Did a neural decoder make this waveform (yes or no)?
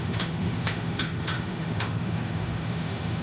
yes